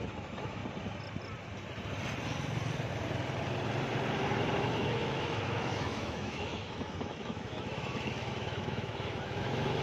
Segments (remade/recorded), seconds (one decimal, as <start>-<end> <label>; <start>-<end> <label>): 0.0-0.6 remade; 0.6-4.6 recorded; 4.6-9.8 remade